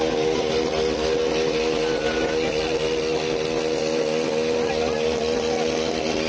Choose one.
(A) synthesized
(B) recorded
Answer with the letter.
B